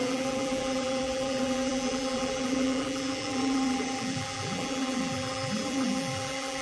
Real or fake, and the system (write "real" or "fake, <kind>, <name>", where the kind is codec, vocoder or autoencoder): fake, vocoder, BigVGAN v2